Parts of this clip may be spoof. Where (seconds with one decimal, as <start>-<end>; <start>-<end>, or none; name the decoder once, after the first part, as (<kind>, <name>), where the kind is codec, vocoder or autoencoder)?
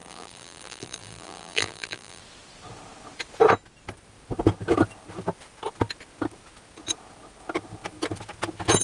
0.0-2.2 (vocoder, BigVGAN v2)